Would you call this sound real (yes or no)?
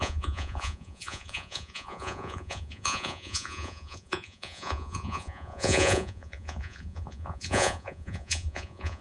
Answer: no